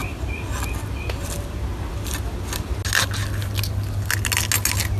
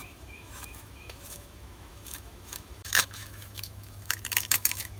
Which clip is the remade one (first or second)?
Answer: second